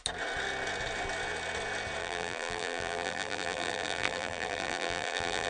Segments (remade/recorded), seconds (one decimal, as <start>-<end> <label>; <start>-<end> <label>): 0.0-2.0 recorded; 2.0-5.5 remade